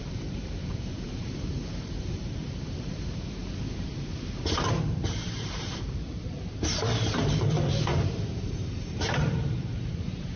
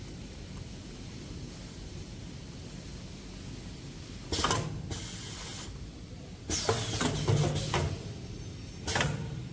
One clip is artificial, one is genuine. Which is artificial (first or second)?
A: first